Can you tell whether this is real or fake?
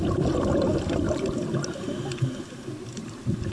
fake